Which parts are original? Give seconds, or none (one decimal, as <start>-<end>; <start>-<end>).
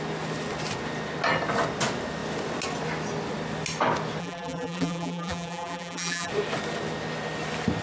0.0-4.2; 6.3-7.8